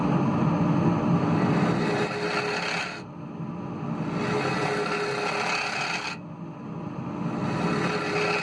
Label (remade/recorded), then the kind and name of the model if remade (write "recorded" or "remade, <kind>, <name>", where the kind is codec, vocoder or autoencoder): recorded